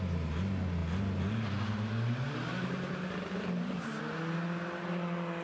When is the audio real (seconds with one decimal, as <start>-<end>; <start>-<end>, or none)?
0.0-5.4